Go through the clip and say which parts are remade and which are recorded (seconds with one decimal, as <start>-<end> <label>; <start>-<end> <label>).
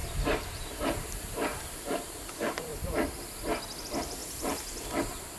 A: 0.0-2.7 remade; 2.7-3.8 recorded; 3.8-4.2 remade; 4.2-5.4 recorded